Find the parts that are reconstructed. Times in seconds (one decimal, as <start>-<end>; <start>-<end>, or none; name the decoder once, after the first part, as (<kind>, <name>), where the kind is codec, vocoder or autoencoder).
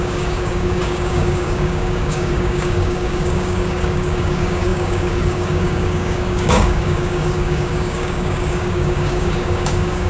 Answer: 0.0-10.1 (codec, DAC)